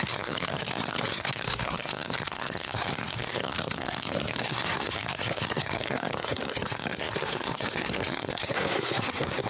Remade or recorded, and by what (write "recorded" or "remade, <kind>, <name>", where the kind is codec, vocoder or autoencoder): remade, codec, SNAC